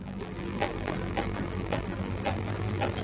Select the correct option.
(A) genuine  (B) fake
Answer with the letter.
B